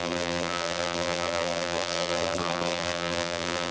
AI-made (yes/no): yes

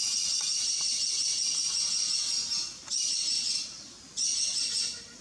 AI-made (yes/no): no